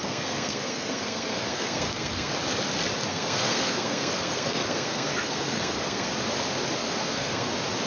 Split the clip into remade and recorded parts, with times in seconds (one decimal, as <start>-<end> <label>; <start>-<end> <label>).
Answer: 0.0-2.3 remade; 2.3-3.1 recorded; 3.1-6.1 remade; 6.1-6.8 recorded; 6.8-7.5 remade; 7.5-7.9 recorded